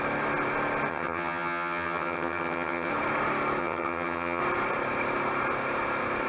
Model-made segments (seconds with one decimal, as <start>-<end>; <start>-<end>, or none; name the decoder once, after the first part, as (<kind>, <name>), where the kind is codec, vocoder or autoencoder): 0.9-2.9 (vocoder, HiFi-GAN); 3.6-4.4